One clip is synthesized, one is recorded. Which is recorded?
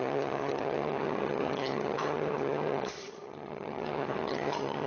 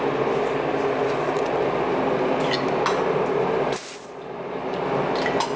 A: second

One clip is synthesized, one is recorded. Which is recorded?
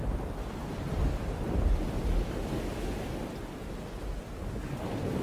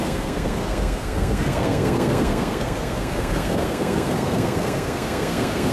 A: first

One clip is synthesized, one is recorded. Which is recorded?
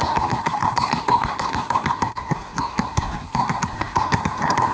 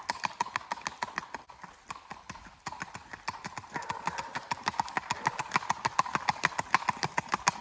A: second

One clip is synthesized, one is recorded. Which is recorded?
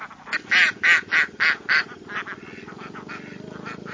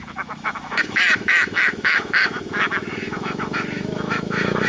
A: first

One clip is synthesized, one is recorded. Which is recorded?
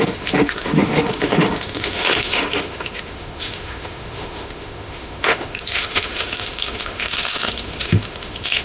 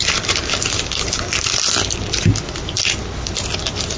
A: second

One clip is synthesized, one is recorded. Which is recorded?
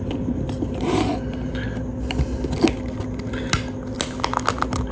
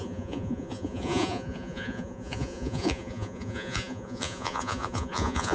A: first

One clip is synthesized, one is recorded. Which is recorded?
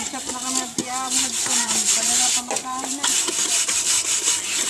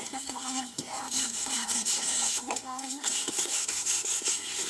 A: first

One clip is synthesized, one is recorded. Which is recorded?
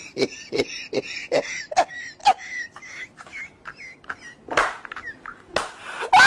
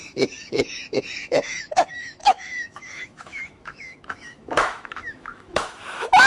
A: first